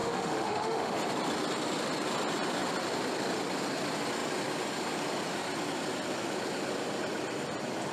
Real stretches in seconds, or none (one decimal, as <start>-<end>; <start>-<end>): 1.0-7.9